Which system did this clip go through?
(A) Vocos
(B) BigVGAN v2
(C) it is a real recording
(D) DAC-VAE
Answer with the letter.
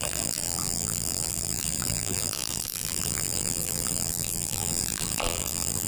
B